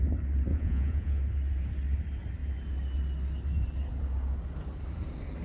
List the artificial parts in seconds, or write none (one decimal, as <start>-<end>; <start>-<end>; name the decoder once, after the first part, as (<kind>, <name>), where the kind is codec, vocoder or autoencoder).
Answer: 0.5-1.2 (vocoder, Vocos)